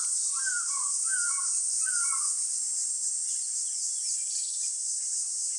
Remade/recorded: remade